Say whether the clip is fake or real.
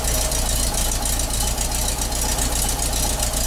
real